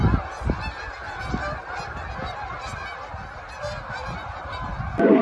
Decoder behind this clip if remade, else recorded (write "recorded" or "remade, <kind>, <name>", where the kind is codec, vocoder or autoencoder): recorded